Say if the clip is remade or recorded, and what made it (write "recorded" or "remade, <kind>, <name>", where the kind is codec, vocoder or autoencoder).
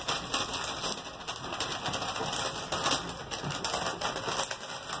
recorded